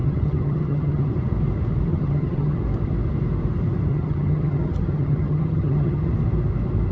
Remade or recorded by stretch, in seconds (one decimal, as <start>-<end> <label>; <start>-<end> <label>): 0.0-1.1 remade; 1.1-1.9 recorded; 1.9-2.6 remade; 2.6-3.9 recorded; 3.9-6.1 remade; 6.1-6.9 recorded